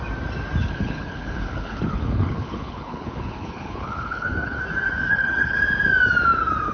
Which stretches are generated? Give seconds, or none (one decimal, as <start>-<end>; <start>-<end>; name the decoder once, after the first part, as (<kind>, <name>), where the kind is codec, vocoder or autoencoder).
0.6-4.6 (codec, HILCodec); 5.1-5.6